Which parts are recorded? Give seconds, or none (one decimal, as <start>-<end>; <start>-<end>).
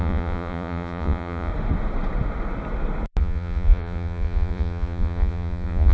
1.5-3.2